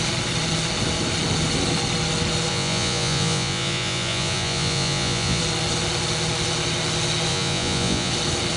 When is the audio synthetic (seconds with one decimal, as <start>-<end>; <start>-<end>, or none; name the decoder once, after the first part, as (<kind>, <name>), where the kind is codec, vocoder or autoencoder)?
2.5-5.4 (vocoder, Vocos); 7.3-8.1